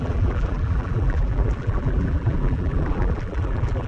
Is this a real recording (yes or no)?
no